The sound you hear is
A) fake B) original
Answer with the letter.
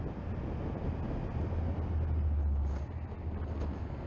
B